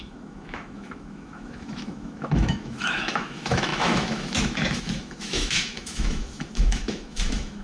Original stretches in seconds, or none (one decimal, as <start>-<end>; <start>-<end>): none